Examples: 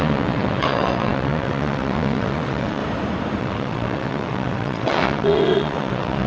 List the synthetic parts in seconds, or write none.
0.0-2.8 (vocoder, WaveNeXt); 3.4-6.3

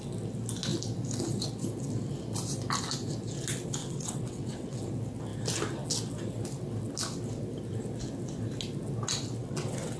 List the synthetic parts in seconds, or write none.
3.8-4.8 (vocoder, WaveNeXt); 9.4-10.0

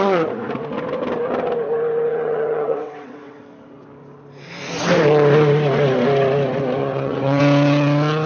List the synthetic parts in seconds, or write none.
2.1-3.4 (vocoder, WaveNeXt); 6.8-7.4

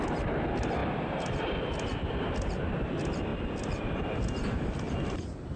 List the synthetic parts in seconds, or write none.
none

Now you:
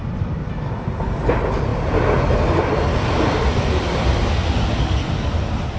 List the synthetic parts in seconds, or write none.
none